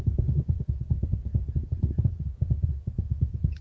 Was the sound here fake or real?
fake